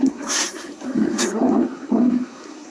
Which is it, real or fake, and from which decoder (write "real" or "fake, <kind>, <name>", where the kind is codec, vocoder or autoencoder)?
fake, codec, SNAC